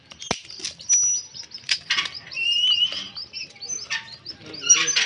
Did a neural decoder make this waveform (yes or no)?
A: no